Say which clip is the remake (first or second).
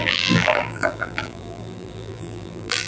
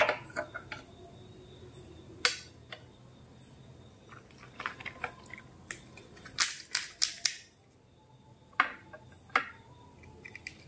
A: first